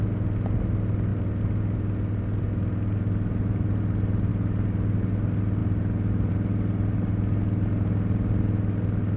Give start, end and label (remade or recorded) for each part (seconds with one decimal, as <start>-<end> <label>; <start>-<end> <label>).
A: 0.0-9.2 recorded